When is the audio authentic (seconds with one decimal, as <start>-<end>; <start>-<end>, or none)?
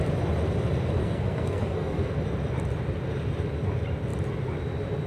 0.0-1.0; 2.1-5.1